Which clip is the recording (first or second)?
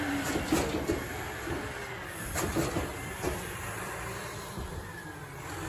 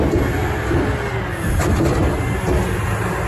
second